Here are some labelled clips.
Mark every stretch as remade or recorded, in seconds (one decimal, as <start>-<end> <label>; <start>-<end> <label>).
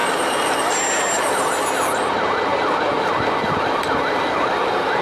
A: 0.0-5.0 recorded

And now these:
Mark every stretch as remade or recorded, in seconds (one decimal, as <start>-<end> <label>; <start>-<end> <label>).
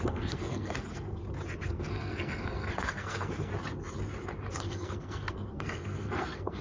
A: 0.0-1.2 remade; 1.2-1.7 recorded; 1.7-3.5 remade; 3.5-4.5 recorded; 4.5-6.6 remade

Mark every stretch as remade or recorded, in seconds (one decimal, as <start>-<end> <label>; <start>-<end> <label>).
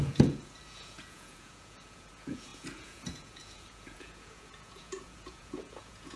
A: 0.0-6.2 remade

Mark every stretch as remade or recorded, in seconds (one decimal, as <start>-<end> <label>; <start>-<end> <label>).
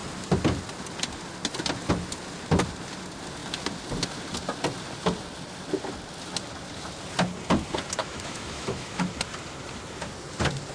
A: 0.0-8.0 recorded; 8.0-9.0 remade; 9.0-10.7 recorded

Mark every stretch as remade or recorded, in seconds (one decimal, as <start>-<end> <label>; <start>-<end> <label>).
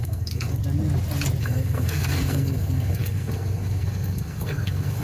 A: 0.0-0.6 remade; 0.6-1.4 recorded; 1.4-5.0 remade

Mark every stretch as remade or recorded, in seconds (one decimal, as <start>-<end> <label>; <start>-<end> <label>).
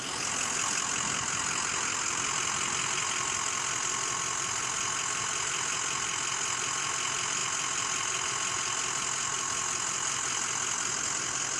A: 0.0-11.6 recorded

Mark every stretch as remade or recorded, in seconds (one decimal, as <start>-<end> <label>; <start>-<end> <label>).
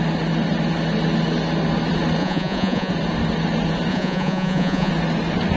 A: 0.0-2.2 recorded; 2.2-2.9 remade; 2.9-3.9 recorded; 3.9-4.9 remade; 4.9-5.6 recorded